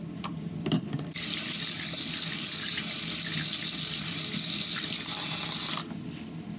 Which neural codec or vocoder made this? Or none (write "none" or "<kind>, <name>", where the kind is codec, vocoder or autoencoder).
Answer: none